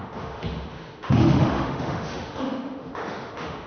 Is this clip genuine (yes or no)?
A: no